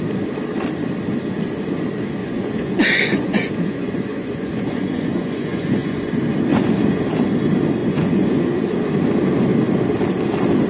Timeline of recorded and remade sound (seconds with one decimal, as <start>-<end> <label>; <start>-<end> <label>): 0.0-2.2 recorded; 2.2-6.1 remade; 6.1-6.5 recorded; 6.5-7.0 remade; 7.0-7.8 recorded; 7.8-8.6 remade; 8.6-10.7 recorded